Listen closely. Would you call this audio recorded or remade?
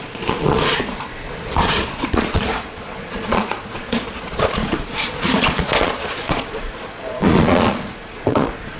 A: remade